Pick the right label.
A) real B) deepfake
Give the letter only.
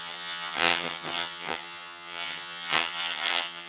B